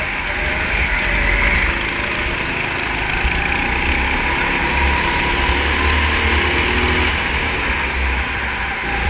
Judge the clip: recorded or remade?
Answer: recorded